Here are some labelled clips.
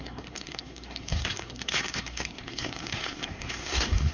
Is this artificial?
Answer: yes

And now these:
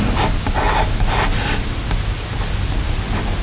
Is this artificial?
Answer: no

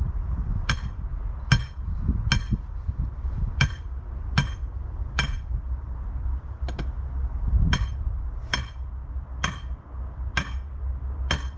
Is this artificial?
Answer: no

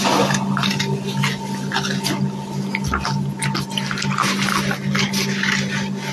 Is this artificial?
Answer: no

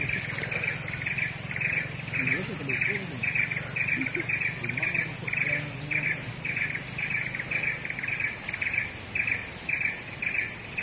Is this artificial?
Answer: no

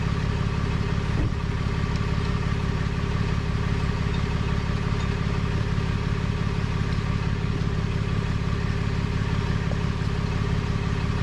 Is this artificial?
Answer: no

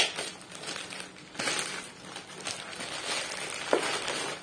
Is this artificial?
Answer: no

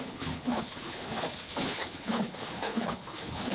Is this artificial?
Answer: yes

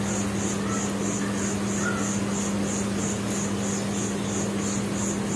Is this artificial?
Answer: no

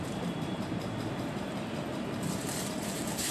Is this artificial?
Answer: yes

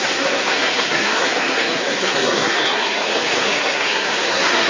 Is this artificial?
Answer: yes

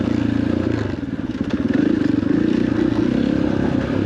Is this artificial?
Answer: no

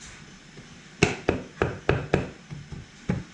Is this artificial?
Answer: no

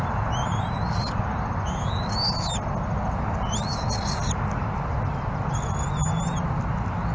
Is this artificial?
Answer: no